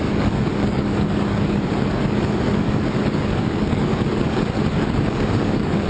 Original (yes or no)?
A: no